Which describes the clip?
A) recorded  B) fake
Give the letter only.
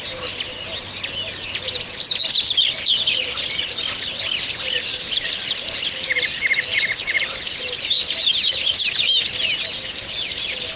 A